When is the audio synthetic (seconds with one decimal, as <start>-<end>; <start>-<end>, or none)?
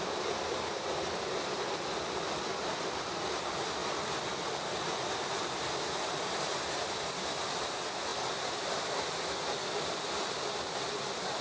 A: none